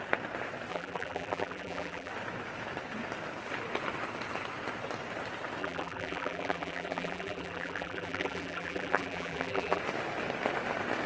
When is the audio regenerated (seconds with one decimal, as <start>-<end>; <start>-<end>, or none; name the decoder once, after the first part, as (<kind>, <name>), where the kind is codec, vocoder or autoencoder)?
0.7-2.1 (vocoder, BigVGAN v2); 5.6-9.8

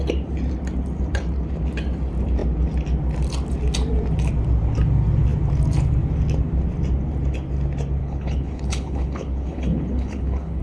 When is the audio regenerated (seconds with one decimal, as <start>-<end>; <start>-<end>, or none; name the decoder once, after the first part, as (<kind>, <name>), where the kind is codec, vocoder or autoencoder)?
8.0-10.6 (codec, HILCodec)

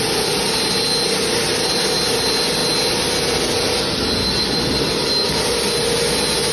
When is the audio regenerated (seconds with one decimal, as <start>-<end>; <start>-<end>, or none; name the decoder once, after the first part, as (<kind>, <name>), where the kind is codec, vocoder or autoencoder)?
none

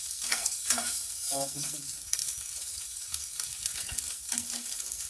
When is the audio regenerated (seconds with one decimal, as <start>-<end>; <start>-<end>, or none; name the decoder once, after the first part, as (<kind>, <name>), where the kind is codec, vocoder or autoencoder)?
0.0-5.1 (codec, SNAC)